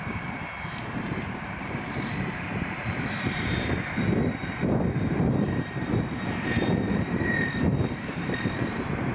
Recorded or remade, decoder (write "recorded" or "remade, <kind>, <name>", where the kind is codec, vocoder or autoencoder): remade, vocoder, BigVGAN v2